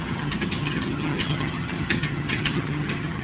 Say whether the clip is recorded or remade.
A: remade